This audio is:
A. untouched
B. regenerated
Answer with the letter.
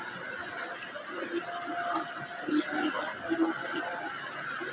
A